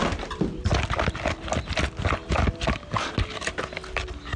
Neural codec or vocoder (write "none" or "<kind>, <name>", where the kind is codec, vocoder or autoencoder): none